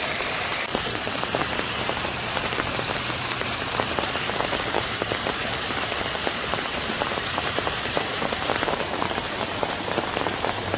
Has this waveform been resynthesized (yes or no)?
yes